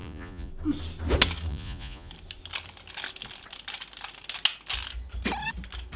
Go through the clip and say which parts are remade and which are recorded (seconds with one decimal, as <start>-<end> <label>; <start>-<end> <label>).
0.0-0.5 remade; 0.5-1.5 recorded; 1.5-2.1 remade; 2.1-6.0 recorded